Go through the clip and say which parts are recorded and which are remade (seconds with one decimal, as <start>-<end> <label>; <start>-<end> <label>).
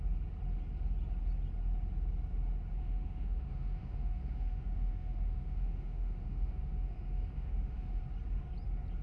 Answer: 0.0-2.8 recorded; 2.8-8.0 remade; 8.0-9.0 recorded